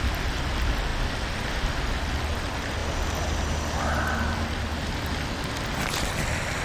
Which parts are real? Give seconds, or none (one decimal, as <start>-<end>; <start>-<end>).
0.0-6.6